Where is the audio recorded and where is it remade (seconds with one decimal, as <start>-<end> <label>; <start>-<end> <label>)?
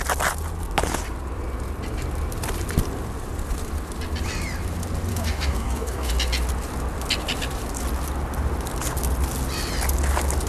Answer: 0.0-5.1 recorded; 5.1-6.1 remade; 6.1-10.5 recorded